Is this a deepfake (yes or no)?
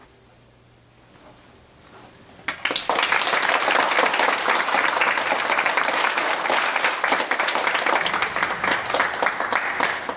no